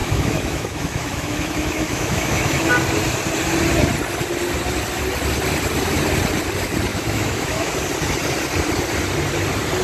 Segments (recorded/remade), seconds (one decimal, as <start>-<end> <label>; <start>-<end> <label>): 0.0-2.7 remade; 2.7-6.9 recorded; 6.9-7.7 remade; 7.7-9.8 recorded